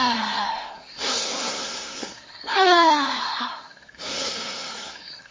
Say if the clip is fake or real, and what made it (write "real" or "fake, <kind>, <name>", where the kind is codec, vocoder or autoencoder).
fake, codec, SNAC